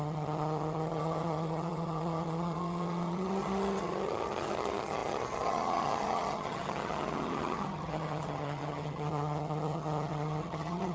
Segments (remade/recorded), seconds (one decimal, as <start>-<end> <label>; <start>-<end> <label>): 0.0-10.9 remade